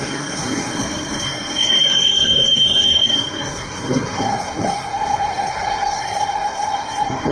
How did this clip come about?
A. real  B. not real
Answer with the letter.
B